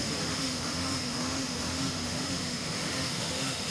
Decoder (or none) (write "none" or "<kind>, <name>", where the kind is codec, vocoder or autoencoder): autoencoder, DAC-VAE